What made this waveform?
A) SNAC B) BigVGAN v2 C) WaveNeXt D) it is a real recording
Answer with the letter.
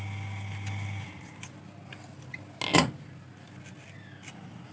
D